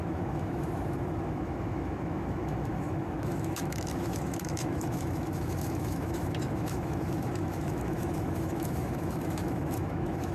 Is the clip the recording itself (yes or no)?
no